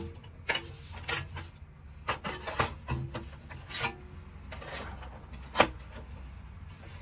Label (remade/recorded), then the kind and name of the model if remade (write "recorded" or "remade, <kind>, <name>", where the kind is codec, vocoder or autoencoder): recorded